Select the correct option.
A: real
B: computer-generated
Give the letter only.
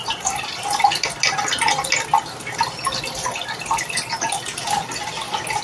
A